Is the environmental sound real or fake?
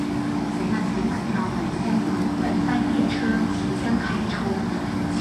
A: fake